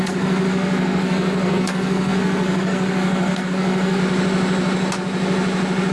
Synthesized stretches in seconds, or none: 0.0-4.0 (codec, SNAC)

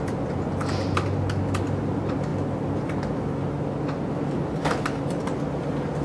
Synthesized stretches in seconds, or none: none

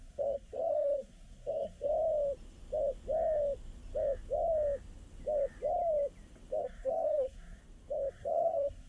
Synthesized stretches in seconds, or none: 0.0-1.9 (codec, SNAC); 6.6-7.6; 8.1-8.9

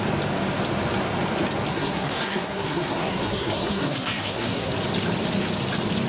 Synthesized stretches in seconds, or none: 1.7-4.7 (codec, SNAC)

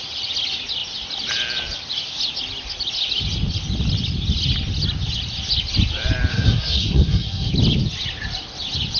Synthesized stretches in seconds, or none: 6.3-7.5 (codec, SNAC)